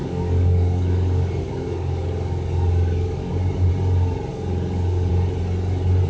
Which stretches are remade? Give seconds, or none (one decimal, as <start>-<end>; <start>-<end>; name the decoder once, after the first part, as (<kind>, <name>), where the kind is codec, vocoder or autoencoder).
0.0-3.7 (codec, DAC); 4.3-5.1